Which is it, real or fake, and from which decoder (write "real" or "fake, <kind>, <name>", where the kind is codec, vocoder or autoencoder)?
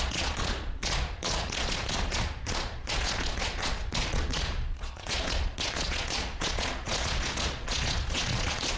fake, vocoder, Vocos